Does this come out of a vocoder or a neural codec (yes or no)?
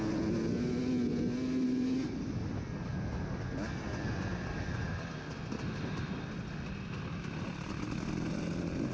no